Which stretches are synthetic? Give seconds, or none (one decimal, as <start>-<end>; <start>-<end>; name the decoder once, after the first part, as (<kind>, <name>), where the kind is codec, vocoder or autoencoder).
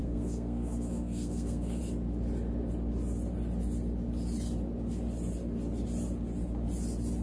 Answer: 0.0-1.8 (codec, SNAC)